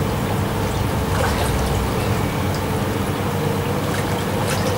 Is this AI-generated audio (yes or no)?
no